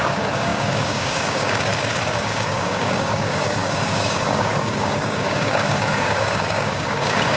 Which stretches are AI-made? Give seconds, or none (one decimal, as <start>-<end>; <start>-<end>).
0.0-1.7; 2.2-7.4